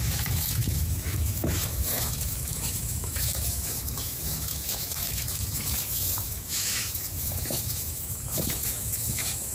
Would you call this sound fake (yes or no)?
yes